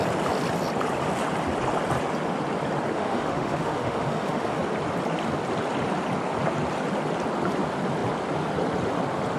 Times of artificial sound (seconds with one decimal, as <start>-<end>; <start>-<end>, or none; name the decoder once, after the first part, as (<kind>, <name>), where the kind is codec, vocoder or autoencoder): 2.9-4.6 (autoencoder, DAC-VAE)